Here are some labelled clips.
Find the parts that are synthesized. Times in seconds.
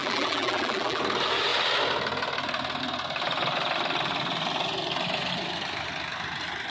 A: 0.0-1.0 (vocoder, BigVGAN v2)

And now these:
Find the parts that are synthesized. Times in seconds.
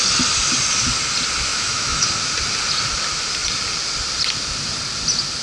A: 1.5-2.1 (autoencoder, DAC-VAE)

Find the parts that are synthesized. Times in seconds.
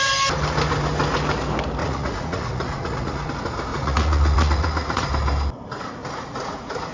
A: 1.8-3.3 (vocoder, Vocos); 3.7-5.1; 6.0-6.9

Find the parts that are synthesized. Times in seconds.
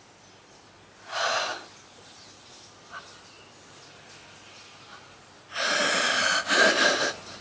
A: none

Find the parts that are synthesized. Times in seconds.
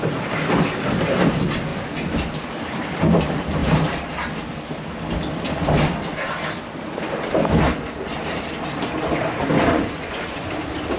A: 9.7-10.5 (vocoder, Vocos)